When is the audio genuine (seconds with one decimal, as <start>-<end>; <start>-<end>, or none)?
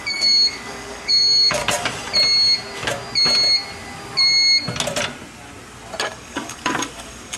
1.6-6.0